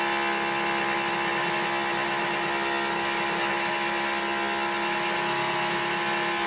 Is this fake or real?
real